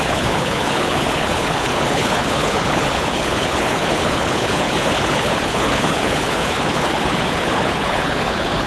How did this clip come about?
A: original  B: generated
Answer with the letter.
B